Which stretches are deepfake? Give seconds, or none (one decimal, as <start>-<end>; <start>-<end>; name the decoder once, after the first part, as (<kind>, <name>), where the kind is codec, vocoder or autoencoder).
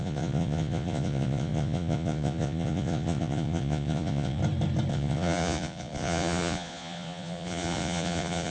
0.0-4.4 (vocoder, Vocos); 4.9-8.5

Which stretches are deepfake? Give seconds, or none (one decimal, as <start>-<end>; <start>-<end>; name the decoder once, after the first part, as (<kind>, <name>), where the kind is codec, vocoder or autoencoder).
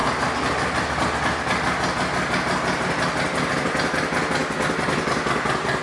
none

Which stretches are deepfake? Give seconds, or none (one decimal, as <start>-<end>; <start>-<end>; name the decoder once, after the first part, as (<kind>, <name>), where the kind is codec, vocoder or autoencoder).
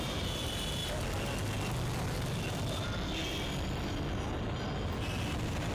none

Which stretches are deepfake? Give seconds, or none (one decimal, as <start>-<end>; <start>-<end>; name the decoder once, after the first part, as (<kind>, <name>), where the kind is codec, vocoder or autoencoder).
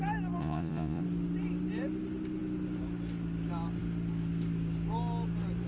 0.4-1.0 (vocoder, Vocos)